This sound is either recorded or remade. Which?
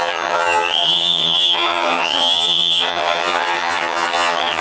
remade